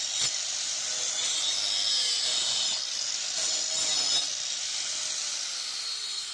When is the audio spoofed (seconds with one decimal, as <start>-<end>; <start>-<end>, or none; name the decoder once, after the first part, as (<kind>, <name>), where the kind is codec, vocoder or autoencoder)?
none